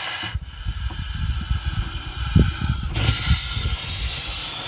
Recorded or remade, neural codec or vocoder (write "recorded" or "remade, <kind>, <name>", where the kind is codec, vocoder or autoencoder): recorded